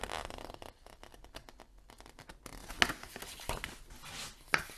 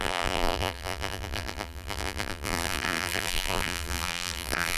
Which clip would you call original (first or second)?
first